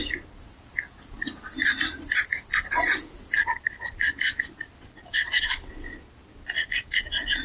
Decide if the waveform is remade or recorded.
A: recorded